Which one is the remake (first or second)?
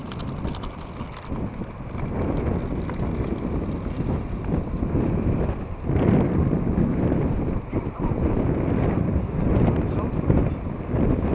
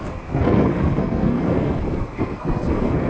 second